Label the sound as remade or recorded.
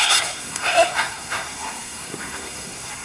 remade